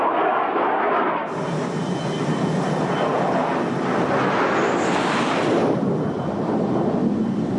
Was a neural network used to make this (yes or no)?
no